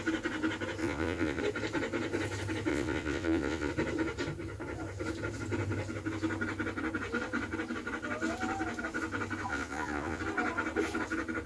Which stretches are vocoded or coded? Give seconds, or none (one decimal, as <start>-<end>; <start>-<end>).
0.8-1.4; 2.7-3.7; 9.5-10.2